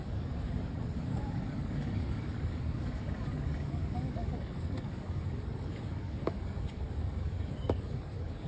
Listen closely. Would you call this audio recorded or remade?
remade